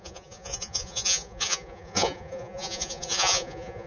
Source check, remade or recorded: remade